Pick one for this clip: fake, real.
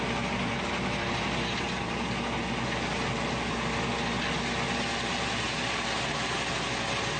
real